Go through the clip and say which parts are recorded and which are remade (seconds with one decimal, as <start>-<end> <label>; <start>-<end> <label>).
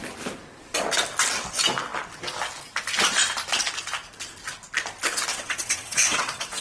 0.0-5.3 recorded; 5.3-6.6 remade